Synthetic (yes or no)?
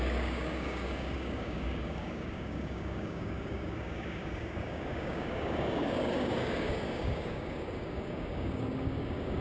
yes